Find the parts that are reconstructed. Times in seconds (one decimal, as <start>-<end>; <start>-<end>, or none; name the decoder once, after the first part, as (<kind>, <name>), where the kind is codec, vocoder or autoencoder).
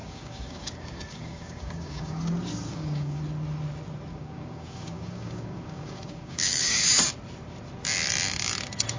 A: 0.0-2.2 (codec, DAC); 2.7-3.2; 4.1-6.9